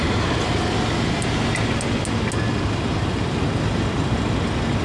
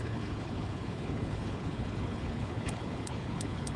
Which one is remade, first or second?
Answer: second